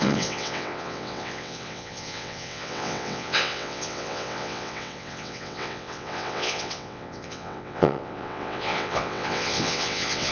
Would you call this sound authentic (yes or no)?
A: no